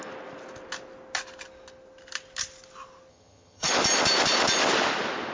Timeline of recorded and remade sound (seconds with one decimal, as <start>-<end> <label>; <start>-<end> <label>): 0.0-3.1 recorded; 3.1-3.7 remade; 3.7-5.3 recorded